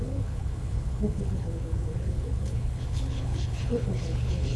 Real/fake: fake